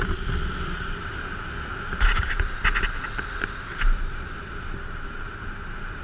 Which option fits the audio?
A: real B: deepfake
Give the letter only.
A